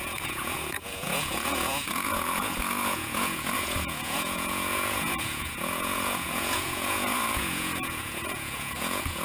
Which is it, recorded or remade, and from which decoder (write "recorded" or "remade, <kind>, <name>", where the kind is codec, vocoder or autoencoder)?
remade, vocoder, Vocos